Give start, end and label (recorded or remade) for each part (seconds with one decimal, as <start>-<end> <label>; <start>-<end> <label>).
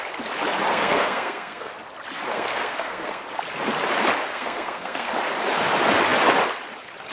0.0-0.7 recorded; 0.7-1.7 remade; 1.7-2.3 recorded; 2.3-3.2 remade; 3.2-4.3 recorded; 4.3-5.1 remade; 5.1-7.1 recorded